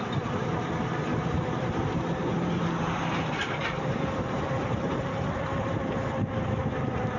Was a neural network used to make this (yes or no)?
yes